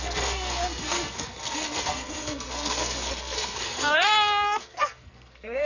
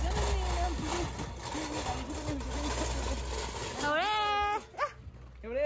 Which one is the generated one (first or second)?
first